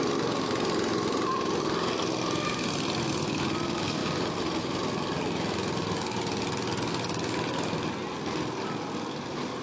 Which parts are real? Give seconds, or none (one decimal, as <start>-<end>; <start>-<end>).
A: 0.0-9.6